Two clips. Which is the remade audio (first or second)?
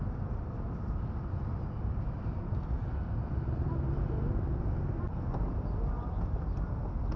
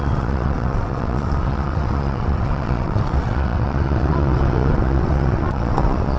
second